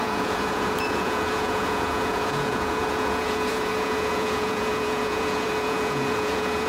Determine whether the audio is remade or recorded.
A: remade